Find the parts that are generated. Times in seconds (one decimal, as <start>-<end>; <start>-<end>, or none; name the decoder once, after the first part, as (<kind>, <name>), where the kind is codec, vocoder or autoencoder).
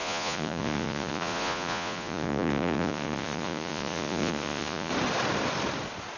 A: 0.0-4.9 (vocoder, Vocos)